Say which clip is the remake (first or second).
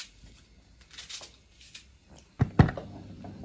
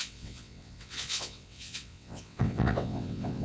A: second